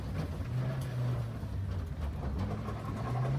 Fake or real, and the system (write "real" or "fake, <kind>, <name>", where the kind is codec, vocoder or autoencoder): real